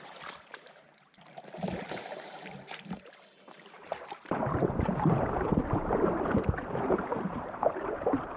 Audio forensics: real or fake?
fake